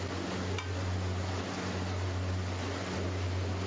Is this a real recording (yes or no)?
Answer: yes